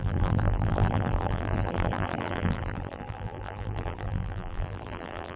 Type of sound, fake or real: fake